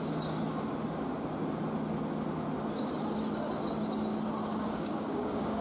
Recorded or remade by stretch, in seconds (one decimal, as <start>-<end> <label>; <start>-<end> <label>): 0.0-4.5 recorded; 4.5-5.6 remade